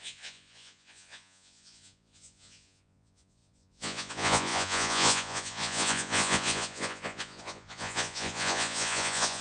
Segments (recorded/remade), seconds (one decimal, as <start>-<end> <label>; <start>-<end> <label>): 0.0-9.4 remade